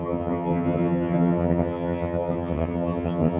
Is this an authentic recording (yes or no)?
no